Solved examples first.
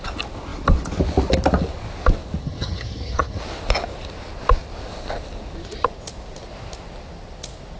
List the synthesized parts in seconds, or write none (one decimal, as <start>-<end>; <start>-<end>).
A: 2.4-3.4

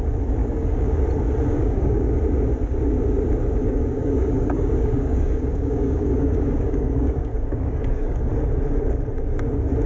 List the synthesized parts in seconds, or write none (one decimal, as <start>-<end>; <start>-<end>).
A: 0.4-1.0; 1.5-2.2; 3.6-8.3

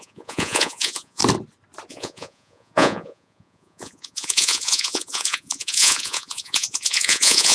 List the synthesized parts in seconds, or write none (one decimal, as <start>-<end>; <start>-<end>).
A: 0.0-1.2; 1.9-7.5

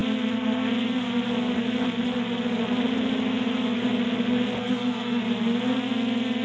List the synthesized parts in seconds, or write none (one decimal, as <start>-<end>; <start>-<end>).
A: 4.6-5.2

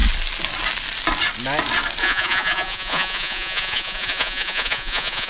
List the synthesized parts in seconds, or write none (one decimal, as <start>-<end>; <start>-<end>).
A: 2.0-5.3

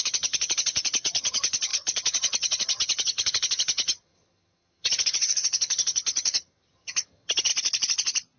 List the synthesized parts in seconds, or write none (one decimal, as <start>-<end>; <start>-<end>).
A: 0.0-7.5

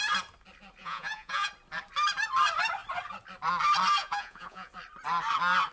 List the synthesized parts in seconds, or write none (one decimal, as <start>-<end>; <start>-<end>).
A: 0.8-1.5; 4.0-4.7

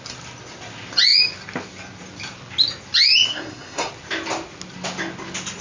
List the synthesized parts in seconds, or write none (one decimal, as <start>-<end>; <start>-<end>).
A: 3.3-3.9